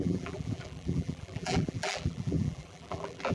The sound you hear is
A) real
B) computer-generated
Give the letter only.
B